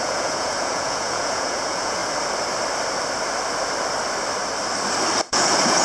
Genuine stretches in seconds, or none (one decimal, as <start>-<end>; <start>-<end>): 2.0-5.3

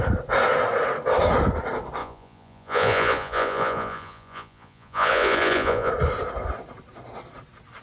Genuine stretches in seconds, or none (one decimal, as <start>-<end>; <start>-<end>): 0.0-2.0; 5.9-7.8

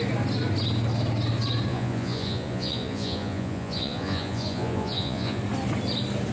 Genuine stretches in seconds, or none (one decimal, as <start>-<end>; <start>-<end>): 0.0-1.7; 5.4-6.3

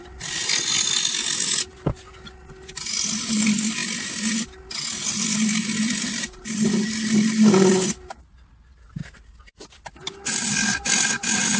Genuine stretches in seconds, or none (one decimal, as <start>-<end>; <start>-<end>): 0.0-11.6

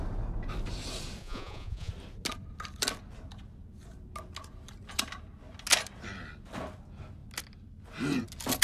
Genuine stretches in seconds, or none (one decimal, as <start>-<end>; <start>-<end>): 0.0-1.2; 1.9-8.6